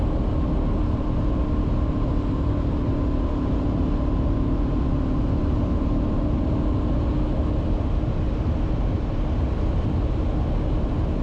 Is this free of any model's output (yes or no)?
yes